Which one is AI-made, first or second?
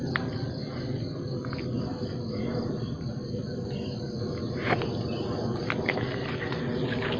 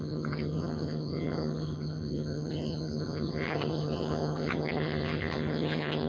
second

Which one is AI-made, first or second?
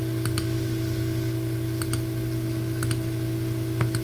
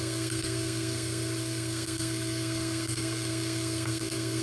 second